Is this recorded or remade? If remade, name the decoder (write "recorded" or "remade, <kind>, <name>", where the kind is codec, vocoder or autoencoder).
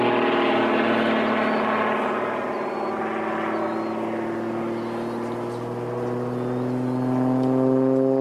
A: recorded